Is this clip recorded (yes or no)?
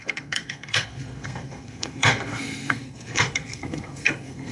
no